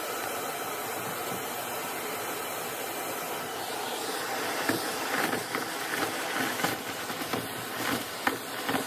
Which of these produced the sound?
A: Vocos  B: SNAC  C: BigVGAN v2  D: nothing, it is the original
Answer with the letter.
D